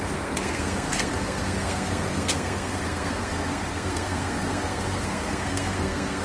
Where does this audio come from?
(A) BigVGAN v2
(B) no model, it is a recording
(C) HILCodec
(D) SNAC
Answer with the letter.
D